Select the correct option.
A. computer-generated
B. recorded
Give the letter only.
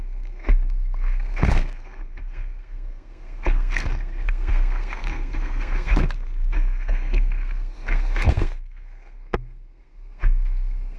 A